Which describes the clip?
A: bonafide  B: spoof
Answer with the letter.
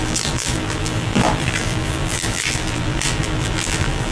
B